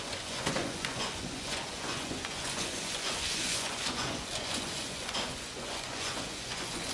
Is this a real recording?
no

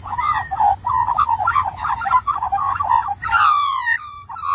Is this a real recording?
no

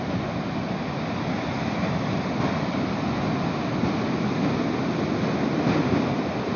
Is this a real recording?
yes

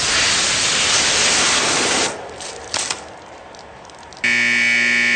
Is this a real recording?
yes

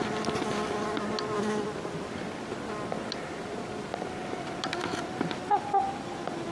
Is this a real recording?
yes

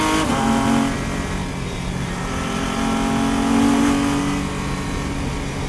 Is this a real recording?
yes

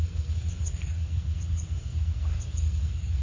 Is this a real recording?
no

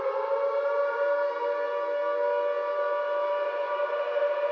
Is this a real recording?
yes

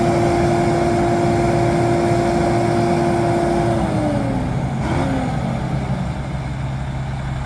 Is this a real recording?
yes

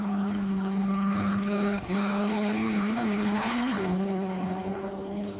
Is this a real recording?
no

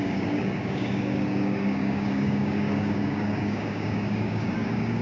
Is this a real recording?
no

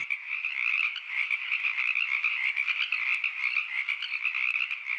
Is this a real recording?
yes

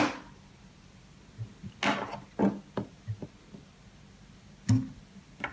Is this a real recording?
yes